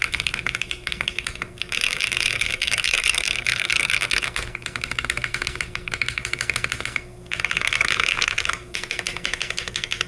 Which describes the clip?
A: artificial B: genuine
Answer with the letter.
A